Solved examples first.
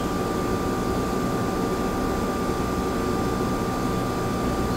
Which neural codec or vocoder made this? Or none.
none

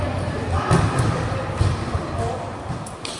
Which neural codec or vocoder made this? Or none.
none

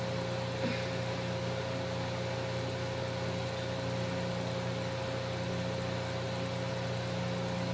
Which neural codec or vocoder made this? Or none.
none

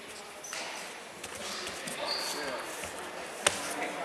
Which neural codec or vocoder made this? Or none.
none